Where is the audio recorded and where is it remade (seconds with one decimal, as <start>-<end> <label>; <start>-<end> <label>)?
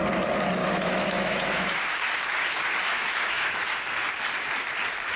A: 0.0-0.6 recorded; 0.6-1.8 remade; 1.8-2.9 recorded; 2.9-3.6 remade; 3.6-5.2 recorded